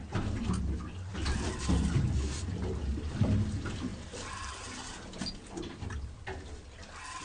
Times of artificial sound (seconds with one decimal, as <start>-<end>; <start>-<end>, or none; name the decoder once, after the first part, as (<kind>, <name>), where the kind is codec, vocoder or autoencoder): none